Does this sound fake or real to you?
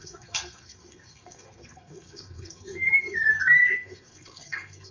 fake